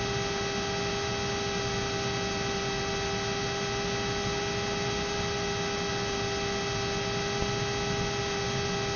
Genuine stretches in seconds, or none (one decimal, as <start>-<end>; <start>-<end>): 0.0-9.0